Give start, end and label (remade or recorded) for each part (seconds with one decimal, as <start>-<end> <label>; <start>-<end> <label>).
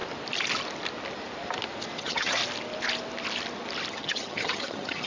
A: 0.0-2.0 recorded; 2.0-2.4 remade; 2.4-3.9 recorded; 3.9-5.1 remade